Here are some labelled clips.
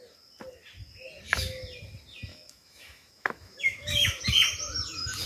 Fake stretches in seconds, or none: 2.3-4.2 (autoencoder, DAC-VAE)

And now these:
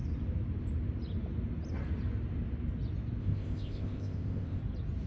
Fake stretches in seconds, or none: 3.2-4.6 (codec, ZipCodec)

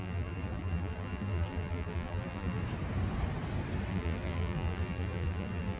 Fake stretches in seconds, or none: 0.0-2.6 (vocoder, BigVGAN v2); 3.9-5.8

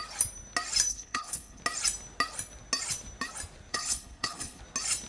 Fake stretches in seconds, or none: 0.9-1.6 (codec, HILCodec); 3.7-4.6